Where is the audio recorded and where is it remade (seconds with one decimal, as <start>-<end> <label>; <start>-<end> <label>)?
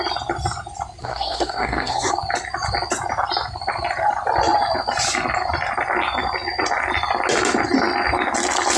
0.0-1.0 recorded; 1.0-2.1 remade; 2.1-8.8 recorded